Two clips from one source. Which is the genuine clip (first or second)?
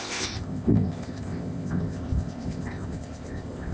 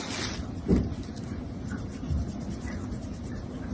second